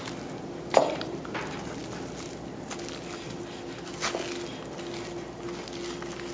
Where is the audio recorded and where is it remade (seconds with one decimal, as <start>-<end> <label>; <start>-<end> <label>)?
0.0-6.3 recorded